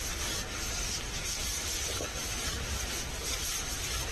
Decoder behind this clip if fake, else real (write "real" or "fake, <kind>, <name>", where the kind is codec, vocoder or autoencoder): real